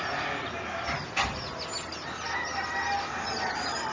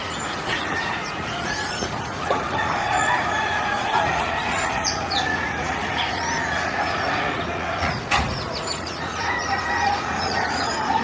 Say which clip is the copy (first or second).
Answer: second